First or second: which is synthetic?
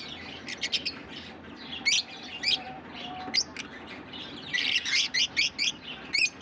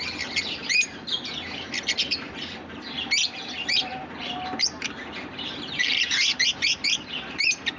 second